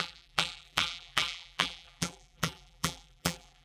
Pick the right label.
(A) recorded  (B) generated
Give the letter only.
B